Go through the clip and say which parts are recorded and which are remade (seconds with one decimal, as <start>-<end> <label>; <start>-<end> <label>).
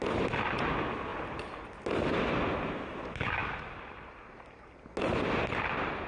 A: 0.0-6.1 recorded